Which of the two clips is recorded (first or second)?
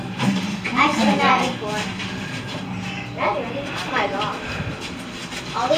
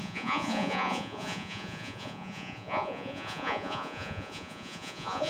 first